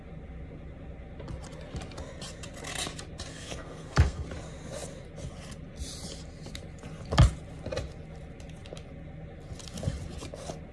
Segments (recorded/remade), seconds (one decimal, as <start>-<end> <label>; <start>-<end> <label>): 0.0-3.3 recorded; 3.3-4.3 remade; 4.3-10.7 recorded